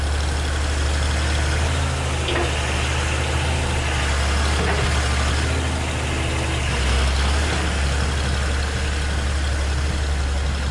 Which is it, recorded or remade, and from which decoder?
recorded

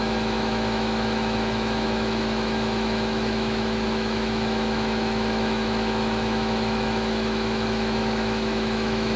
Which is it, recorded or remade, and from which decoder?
remade, autoencoder, DAC-VAE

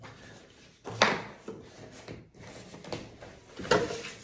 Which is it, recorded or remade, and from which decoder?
recorded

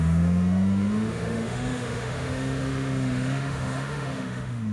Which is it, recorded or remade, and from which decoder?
remade, autoencoder, DAC-VAE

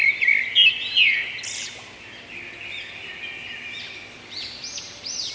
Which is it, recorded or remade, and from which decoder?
recorded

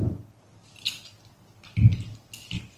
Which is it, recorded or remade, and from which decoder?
recorded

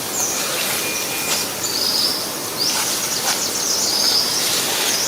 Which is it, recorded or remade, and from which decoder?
recorded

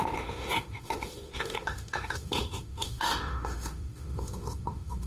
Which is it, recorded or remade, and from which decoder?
remade, autoencoder, DAC-VAE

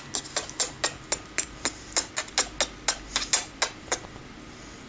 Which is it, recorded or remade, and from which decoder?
recorded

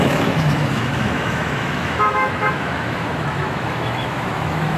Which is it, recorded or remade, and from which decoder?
remade, autoencoder, DAC-VAE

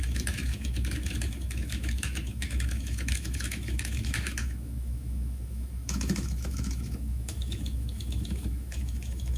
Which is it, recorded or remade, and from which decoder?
remade, autoencoder, DAC-VAE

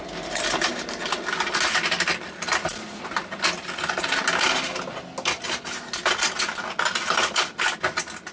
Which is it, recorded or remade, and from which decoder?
recorded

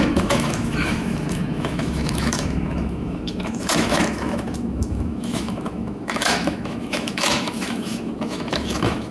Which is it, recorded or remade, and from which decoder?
remade, autoencoder, DAC-VAE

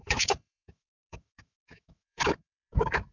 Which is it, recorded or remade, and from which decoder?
remade, autoencoder, DAC-VAE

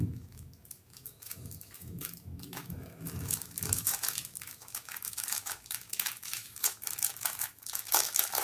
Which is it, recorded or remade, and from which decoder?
remade, autoencoder, DAC-VAE